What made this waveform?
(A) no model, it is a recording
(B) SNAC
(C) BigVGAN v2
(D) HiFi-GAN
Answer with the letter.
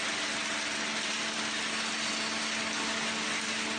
A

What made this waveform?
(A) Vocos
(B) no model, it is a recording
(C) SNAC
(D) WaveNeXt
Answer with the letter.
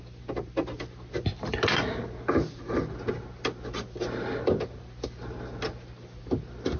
B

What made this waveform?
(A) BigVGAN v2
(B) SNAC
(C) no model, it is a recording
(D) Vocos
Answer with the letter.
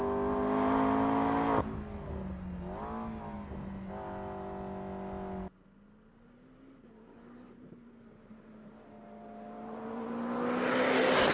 C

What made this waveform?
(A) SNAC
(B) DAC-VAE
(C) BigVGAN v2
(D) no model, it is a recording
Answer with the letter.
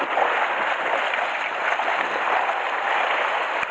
D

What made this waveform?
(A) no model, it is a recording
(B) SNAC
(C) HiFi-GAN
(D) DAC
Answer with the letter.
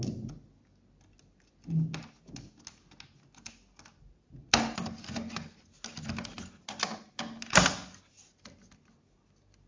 A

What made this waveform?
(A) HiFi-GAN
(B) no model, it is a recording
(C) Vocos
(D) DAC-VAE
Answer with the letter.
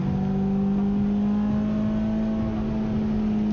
B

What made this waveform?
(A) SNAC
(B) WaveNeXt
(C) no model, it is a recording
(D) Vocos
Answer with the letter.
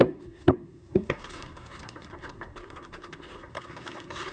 A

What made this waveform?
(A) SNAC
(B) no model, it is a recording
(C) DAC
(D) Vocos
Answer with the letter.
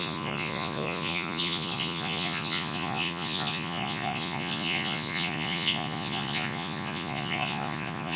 D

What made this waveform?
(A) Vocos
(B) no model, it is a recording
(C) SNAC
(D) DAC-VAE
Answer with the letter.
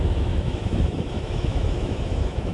D